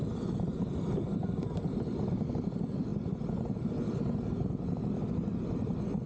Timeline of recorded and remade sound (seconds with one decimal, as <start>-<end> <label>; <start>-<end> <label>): 0.0-6.1 recorded